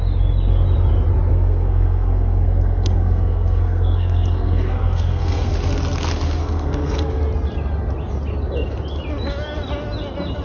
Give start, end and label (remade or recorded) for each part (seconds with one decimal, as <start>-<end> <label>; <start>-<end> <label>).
0.0-1.3 recorded; 1.3-5.5 remade; 5.5-6.4 recorded; 6.4-7.2 remade; 7.2-10.4 recorded